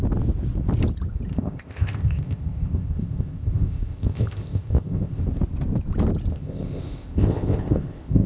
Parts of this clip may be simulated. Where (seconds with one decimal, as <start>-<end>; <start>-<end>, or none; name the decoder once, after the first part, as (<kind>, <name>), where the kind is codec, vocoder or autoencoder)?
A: 1.3-5.2 (codec, ZipCodec); 6.3-8.3